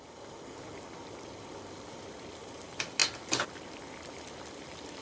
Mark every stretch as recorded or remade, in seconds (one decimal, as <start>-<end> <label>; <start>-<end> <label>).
0.0-5.0 recorded